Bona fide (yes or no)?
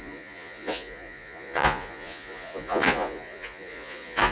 no